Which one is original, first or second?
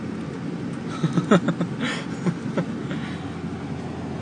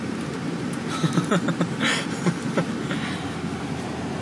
first